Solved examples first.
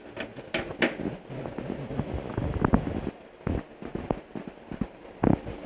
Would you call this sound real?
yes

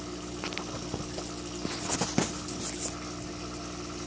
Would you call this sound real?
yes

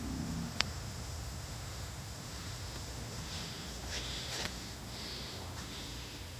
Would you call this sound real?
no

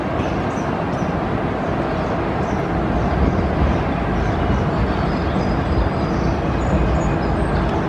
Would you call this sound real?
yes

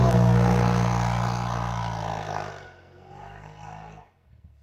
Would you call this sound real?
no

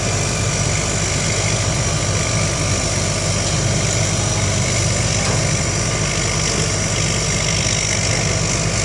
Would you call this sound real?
yes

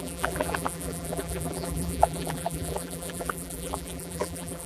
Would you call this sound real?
no